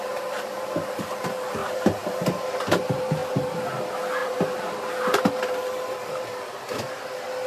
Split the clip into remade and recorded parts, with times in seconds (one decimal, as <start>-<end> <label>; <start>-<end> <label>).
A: 0.0-1.6 recorded; 1.6-2.3 remade; 2.3-4.2 recorded; 4.2-4.8 remade; 4.8-7.5 recorded